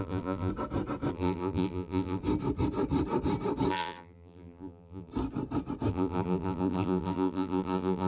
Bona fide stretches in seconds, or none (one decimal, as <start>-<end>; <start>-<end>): 0.5-1.1; 2.2-3.7; 5.1-5.9